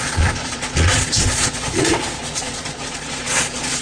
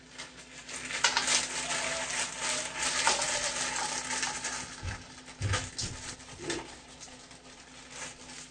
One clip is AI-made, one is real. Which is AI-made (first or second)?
first